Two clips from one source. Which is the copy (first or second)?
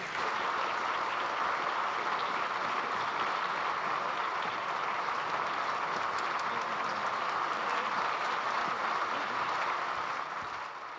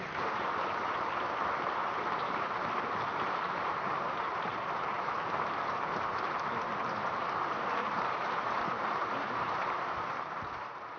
second